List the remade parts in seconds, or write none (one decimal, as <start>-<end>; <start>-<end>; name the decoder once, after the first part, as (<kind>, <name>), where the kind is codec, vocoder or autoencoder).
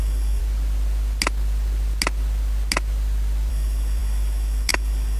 0.0-0.4 (codec, DAC); 3.5-5.2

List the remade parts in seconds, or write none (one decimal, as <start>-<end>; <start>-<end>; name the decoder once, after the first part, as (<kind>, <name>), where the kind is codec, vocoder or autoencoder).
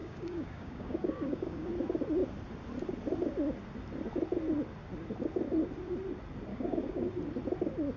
0.0-1.7 (codec, DAC); 6.5-7.1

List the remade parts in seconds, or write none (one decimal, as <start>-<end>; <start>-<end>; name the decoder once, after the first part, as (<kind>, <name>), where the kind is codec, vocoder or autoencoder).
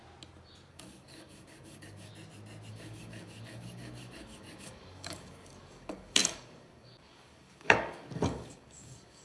0.7-2.1 (codec, DAC); 2.7-9.2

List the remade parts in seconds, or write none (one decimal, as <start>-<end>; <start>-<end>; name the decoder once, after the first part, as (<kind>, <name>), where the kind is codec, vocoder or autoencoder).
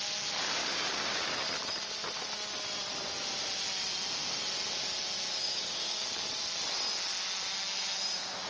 0.6-1.1 (codec, DAC); 5.4-6.1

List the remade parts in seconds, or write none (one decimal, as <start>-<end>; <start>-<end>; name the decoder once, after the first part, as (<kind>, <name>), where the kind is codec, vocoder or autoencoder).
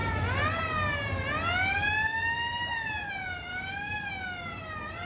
3.5-4.1 (codec, DAC)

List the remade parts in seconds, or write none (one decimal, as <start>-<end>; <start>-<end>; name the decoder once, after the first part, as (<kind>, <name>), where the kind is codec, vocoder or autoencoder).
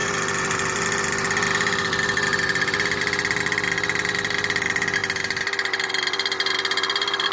none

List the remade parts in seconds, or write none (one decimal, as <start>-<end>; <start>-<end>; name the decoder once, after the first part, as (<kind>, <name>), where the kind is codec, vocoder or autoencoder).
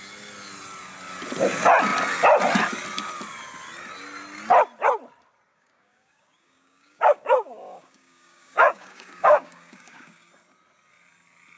5.5-10.3 (codec, DAC)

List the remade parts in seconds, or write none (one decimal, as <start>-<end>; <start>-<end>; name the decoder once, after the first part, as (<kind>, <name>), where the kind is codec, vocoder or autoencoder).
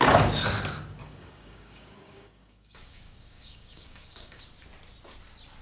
1.0-4.4 (codec, DAC)